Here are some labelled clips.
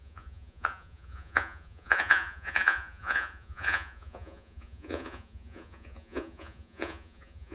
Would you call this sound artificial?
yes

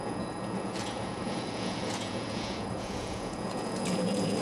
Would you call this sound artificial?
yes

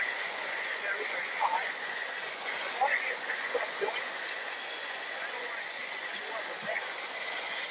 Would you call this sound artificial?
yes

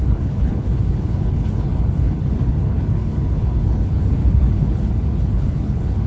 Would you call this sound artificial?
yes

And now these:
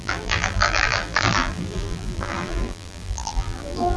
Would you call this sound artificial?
yes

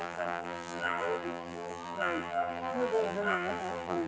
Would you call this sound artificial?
yes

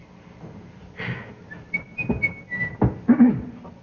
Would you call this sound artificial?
no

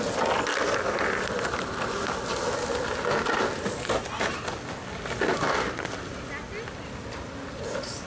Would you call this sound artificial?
no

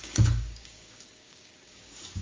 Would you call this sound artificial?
yes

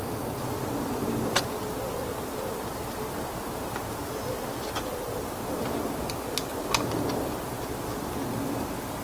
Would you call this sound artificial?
no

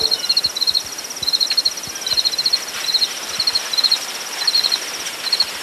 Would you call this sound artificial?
yes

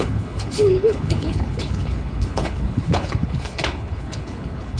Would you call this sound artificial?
yes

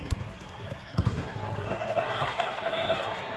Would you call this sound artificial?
yes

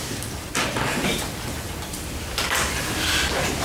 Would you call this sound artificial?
yes